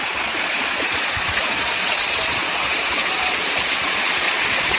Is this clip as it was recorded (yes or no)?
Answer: no